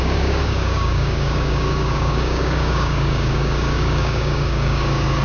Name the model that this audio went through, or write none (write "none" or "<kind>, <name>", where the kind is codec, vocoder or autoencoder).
codec, DAC